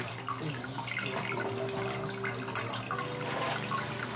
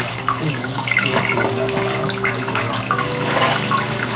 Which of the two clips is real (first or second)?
first